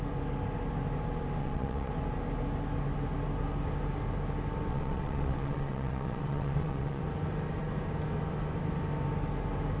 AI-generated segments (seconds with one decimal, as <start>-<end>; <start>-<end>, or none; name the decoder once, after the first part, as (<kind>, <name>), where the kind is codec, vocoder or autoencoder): 1.4-1.9 (vocoder, WaveNeXt); 4.7-7.0